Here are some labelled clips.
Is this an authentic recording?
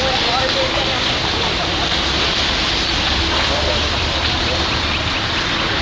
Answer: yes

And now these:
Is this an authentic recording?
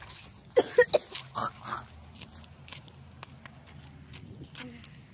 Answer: yes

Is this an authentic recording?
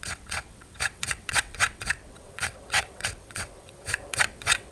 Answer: no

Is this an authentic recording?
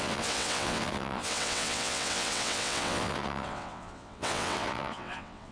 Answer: no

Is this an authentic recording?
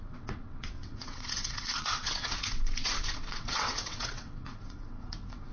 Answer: no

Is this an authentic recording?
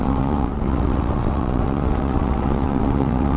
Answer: no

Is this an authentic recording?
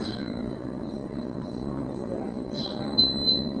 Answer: no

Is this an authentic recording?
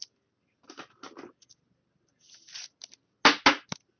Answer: yes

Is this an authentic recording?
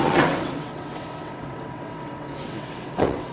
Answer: no